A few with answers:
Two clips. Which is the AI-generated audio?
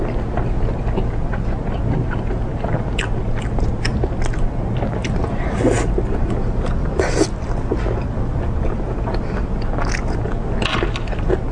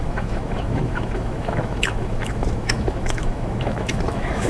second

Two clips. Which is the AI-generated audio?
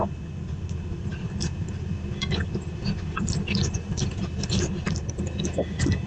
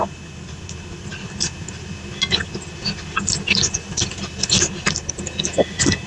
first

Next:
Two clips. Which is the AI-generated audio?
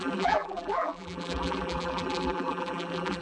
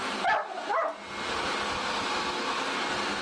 first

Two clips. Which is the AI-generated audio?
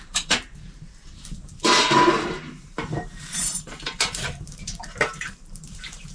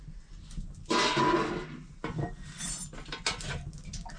first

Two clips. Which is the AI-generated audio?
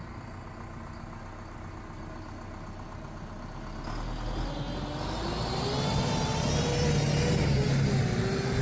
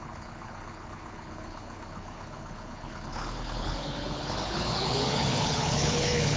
second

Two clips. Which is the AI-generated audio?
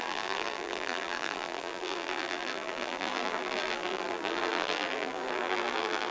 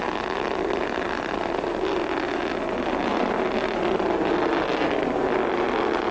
first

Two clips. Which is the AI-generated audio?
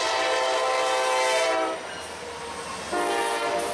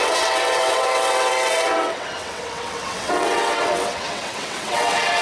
second